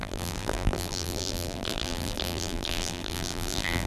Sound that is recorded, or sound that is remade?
remade